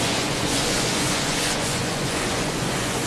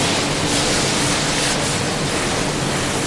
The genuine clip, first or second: second